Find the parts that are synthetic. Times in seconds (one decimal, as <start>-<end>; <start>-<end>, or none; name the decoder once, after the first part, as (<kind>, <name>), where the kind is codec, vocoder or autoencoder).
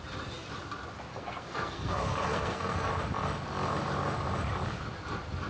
1.1-2.9 (codec, SNAC)